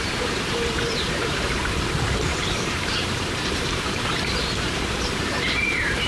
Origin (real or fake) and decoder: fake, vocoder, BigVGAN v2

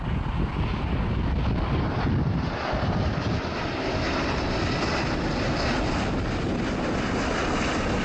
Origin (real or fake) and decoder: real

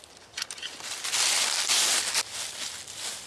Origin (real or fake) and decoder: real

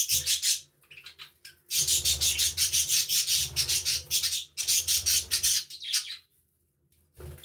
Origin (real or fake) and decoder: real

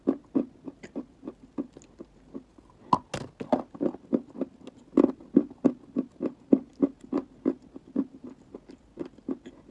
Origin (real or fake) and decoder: real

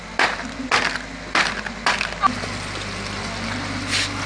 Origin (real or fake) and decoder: real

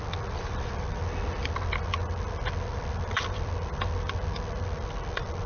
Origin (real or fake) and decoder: fake, vocoder, BigVGAN v2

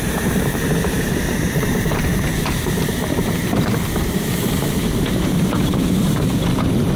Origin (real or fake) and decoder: fake, vocoder, BigVGAN v2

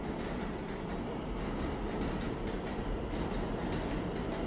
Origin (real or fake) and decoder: fake, vocoder, BigVGAN v2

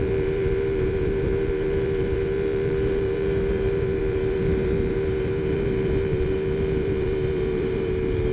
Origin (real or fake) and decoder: fake, vocoder, BigVGAN v2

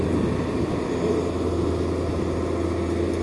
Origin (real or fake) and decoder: real